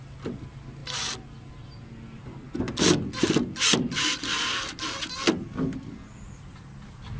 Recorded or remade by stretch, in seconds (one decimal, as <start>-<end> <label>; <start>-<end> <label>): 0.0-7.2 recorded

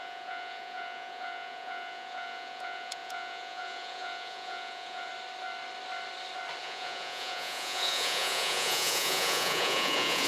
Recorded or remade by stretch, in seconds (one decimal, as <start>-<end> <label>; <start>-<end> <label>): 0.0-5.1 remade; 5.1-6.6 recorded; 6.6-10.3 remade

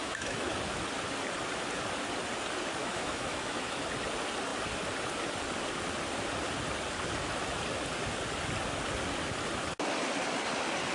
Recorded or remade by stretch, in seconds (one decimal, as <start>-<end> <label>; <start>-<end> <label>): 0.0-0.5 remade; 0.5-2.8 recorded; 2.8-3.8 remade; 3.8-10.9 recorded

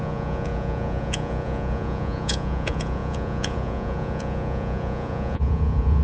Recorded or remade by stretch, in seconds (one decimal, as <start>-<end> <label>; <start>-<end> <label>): 0.0-6.0 remade